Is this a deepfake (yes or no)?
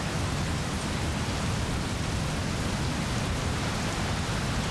no